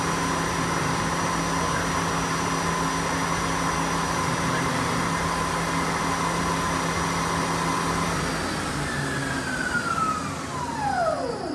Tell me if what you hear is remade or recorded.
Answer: recorded